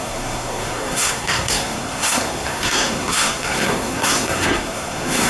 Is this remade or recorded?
remade